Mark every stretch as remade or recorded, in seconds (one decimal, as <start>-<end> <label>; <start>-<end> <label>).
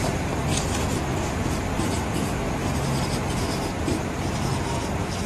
0.0-1.1 recorded; 1.1-1.8 remade; 1.8-2.6 recorded; 2.6-4.6 remade; 4.6-5.3 recorded